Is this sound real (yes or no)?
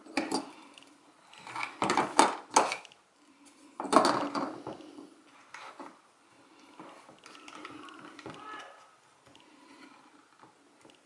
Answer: yes